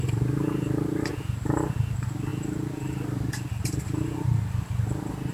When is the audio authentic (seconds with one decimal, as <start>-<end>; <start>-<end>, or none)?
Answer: 0.0-5.3